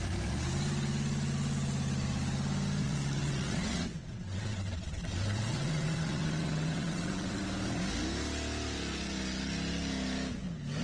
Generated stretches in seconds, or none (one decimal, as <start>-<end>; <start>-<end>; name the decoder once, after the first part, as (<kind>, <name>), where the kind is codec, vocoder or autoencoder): 2.8-7.4 (vocoder, WaveNeXt)